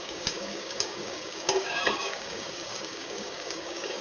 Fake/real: fake